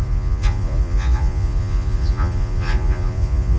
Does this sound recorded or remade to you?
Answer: remade